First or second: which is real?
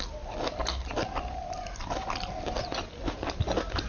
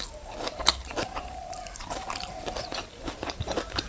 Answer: first